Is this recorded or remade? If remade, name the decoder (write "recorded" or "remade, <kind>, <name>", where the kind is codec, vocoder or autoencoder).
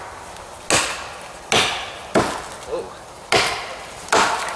recorded